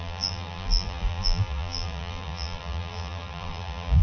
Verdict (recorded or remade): remade